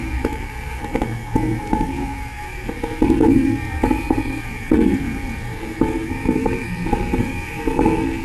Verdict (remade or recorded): remade